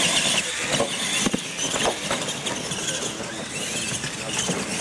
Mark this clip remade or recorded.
recorded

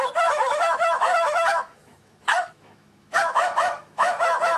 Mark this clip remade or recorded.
remade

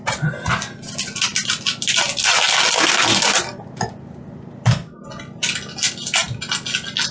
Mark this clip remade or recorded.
recorded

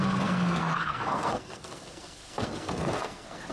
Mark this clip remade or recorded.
remade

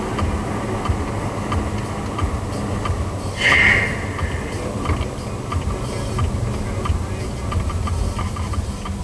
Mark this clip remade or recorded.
recorded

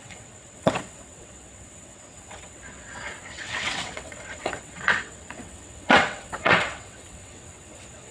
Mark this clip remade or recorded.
remade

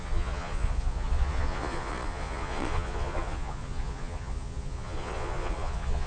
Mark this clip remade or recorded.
remade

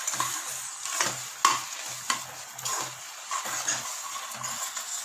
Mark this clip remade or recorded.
recorded